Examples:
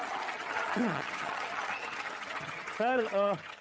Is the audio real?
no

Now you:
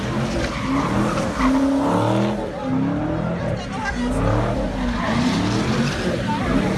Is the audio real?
yes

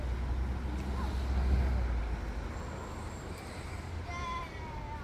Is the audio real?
yes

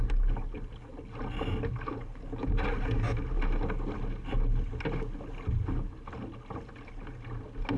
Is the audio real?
yes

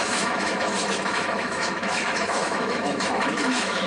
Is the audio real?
no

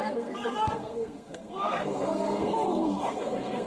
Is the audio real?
no